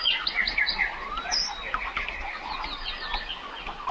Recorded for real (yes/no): yes